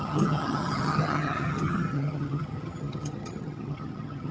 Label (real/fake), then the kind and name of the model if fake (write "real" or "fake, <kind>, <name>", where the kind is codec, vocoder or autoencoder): fake, vocoder, HiFi-GAN